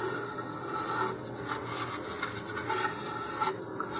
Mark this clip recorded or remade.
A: recorded